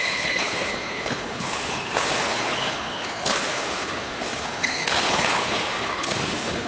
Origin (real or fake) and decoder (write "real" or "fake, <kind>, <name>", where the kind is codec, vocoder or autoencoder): fake, codec, HILCodec